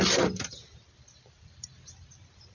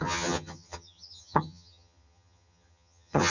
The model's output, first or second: second